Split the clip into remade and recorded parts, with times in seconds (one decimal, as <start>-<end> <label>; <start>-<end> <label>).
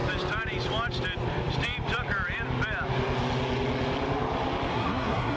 0.0-4.7 recorded; 4.7-5.4 remade